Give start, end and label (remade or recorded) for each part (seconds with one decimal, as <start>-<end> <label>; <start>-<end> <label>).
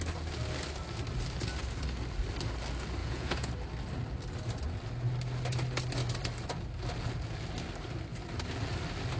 0.0-3.0 recorded; 3.0-3.5 remade; 3.5-9.2 recorded